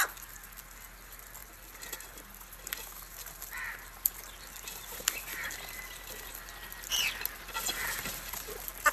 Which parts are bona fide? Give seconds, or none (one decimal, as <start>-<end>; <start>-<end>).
0.0-8.9